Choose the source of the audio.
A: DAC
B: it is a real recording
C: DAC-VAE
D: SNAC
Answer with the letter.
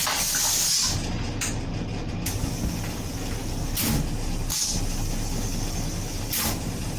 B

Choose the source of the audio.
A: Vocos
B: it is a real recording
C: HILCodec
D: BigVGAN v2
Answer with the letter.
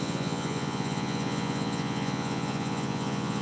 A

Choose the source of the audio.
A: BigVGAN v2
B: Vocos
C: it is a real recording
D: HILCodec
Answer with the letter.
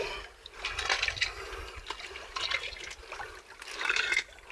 C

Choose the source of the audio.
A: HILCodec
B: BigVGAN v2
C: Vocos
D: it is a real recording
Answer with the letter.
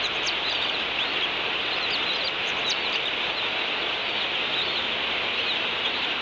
D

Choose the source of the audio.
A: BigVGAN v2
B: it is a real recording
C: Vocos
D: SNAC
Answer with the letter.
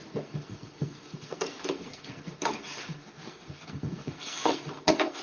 D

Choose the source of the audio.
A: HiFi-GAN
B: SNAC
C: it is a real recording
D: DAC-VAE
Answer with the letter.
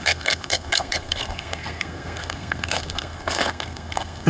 B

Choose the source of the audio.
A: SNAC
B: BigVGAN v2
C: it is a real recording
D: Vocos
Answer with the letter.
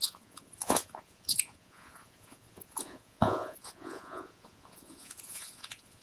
D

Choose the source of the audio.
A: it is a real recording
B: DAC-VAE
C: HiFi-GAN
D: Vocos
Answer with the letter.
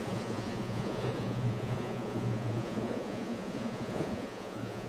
D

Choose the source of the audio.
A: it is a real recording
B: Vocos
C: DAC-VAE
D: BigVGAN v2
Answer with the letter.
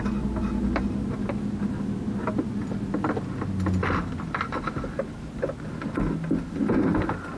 A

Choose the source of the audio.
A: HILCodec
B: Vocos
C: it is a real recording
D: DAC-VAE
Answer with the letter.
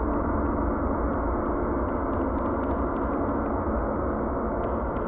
C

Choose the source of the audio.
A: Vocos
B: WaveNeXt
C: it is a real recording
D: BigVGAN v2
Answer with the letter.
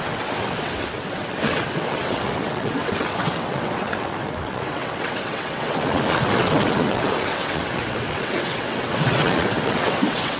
B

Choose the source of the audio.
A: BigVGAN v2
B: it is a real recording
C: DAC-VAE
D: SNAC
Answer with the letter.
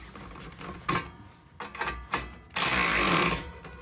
B